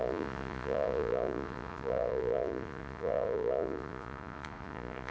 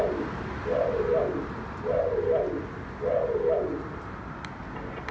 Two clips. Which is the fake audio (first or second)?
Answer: first